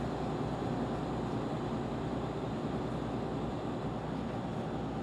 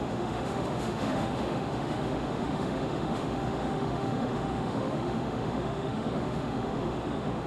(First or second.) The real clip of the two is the first